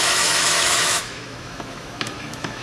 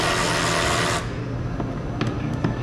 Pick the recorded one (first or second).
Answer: second